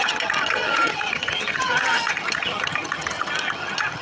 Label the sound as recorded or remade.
remade